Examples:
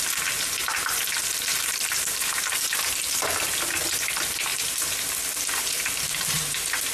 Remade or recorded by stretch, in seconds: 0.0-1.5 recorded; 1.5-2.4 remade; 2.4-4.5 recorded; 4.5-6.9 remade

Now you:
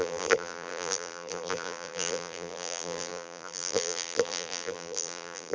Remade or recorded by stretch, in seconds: 0.0-5.5 remade

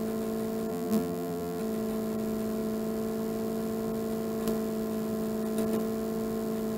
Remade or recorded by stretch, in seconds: 0.0-0.7 recorded; 0.7-1.6 remade; 1.6-6.8 recorded

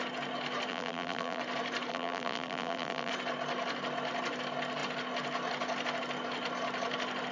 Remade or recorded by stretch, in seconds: 0.0-0.7 recorded; 0.7-1.4 remade; 1.4-1.9 recorded; 1.9-3.1 remade; 3.1-7.3 recorded